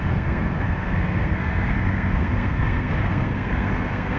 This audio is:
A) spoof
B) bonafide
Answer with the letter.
A